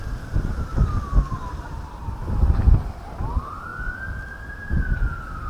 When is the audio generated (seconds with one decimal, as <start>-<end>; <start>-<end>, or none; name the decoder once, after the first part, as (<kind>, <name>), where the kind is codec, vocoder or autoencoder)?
0.0-0.7 (vocoder, BigVGAN v2); 1.3-2.2; 3.0-3.7